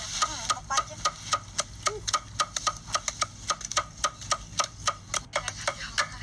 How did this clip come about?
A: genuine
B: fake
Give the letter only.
A